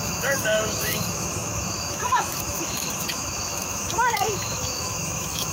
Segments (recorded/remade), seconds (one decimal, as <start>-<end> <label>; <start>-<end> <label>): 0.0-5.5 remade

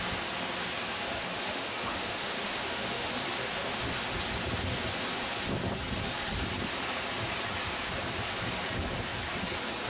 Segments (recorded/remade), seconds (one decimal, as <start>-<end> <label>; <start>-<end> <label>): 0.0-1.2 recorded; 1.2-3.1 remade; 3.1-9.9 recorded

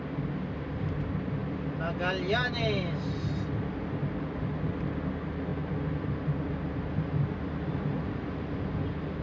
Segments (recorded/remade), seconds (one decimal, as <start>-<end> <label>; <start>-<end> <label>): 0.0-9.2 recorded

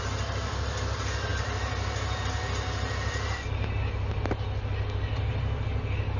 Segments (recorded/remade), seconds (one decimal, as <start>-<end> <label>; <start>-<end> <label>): 0.0-6.2 recorded